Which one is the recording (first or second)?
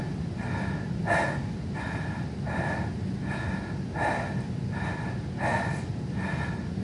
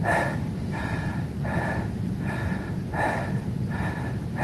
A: first